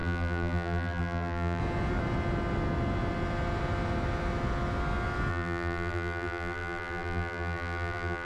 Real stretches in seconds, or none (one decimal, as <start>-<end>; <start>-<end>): 1.6-5.3